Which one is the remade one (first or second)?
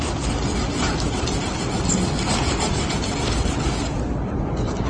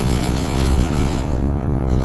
second